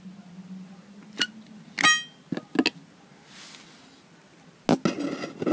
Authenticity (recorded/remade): recorded